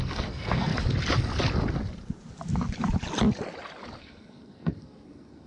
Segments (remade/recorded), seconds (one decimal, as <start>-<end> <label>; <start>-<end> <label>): 0.0-0.7 remade; 0.7-4.0 recorded; 4.0-5.5 remade